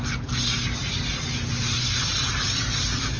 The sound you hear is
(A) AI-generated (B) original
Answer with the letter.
B